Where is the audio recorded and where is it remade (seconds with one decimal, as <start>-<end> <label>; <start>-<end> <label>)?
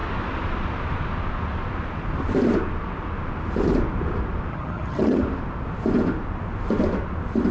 0.0-4.5 recorded; 4.5-5.2 remade; 5.2-7.5 recorded